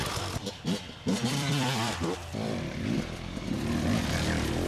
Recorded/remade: remade